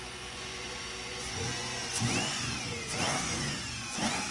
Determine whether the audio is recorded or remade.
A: remade